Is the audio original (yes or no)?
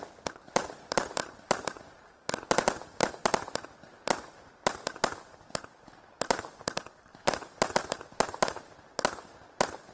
yes